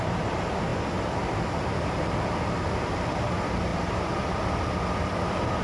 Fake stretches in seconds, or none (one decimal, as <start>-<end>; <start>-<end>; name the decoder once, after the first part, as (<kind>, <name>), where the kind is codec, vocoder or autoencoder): none